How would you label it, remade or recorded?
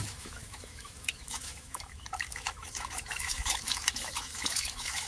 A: remade